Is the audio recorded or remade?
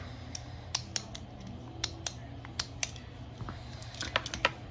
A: recorded